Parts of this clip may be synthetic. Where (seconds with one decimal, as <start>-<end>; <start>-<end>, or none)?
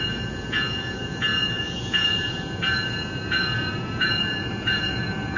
0.0-5.4